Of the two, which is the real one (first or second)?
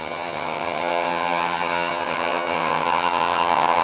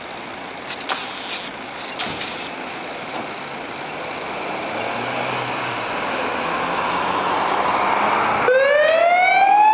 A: second